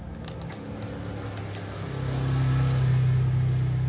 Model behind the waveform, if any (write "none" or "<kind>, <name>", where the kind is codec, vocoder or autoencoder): none